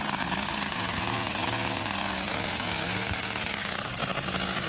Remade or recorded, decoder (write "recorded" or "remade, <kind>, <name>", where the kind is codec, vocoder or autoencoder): recorded